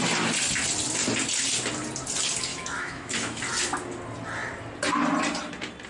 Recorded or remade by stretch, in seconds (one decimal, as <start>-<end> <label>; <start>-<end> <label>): 0.0-2.5 recorded; 2.5-3.4 remade; 3.4-5.9 recorded